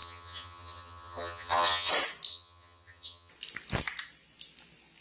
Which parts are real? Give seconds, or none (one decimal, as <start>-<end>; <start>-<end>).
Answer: 1.9-2.3; 3.3-5.0

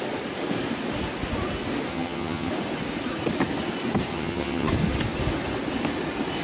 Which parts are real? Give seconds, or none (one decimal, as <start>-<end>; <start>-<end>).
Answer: 0.0-1.9; 2.5-4.1; 4.7-6.4

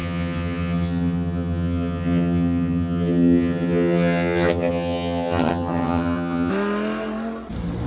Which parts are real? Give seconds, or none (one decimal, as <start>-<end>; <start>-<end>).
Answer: 6.5-7.9

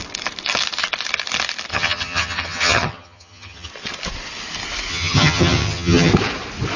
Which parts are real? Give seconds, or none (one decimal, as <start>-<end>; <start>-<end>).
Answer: 0.0-1.7; 3.7-4.9; 6.1-6.8